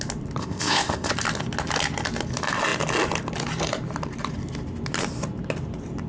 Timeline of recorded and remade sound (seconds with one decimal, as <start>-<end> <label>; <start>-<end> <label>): 0.0-0.4 recorded; 0.4-1.1 remade; 1.1-6.1 recorded